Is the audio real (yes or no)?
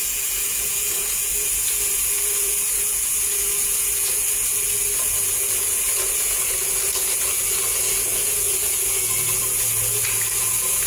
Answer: no